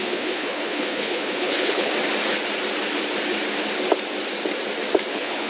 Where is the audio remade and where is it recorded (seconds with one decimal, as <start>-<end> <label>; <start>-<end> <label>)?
0.0-1.9 remade; 1.9-5.1 recorded; 5.1-5.5 remade